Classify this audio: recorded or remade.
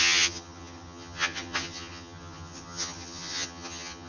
remade